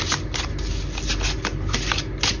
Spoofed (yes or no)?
no